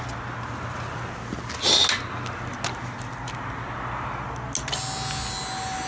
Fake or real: real